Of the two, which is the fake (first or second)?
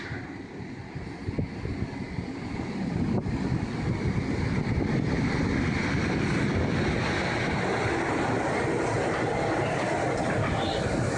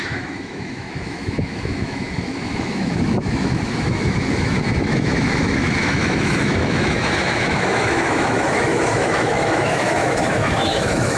second